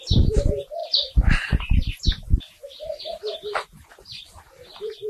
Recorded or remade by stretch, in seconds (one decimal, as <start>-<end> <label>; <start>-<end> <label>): 0.0-5.1 remade